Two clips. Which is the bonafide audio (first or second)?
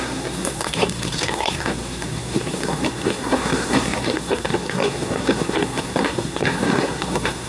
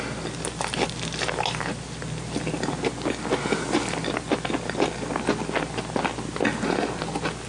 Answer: second